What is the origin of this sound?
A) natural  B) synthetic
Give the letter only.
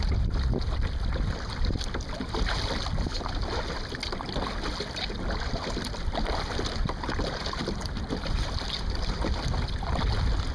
A